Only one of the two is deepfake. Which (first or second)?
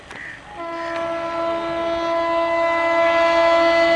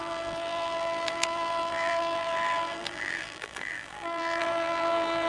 second